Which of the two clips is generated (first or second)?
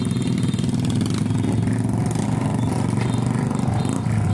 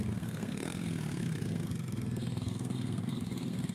second